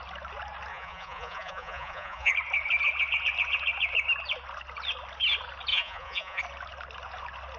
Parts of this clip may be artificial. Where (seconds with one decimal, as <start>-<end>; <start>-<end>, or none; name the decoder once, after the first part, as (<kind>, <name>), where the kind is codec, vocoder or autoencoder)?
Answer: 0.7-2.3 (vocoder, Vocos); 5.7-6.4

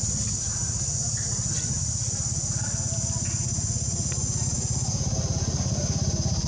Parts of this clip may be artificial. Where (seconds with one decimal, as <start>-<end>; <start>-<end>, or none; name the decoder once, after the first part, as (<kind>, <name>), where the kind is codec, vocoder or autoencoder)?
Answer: none

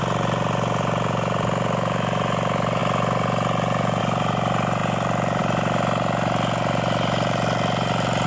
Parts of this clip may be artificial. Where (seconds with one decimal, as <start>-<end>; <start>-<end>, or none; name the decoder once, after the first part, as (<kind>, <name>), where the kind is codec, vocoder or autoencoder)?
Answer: none

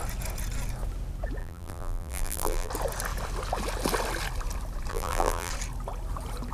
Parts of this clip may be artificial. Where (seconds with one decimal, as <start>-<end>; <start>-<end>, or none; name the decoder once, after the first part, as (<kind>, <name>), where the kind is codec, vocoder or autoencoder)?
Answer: 1.4-2.7 (vocoder, BigVGAN v2); 4.9-5.5

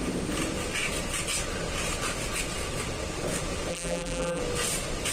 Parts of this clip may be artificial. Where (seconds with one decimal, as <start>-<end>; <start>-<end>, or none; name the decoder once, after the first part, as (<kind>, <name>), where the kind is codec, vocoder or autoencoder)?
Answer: 3.7-4.4 (vocoder, BigVGAN v2)

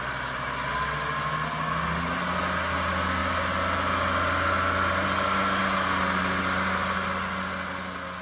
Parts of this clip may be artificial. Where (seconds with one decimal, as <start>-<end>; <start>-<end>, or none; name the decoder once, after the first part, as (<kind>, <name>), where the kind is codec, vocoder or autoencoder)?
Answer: none